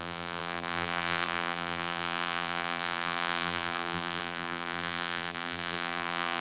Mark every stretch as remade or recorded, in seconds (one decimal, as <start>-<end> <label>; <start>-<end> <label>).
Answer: 0.0-6.4 remade